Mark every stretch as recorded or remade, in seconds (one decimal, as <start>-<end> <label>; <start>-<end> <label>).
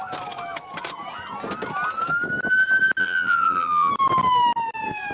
0.0-3.0 recorded; 3.0-3.9 remade; 3.9-5.1 recorded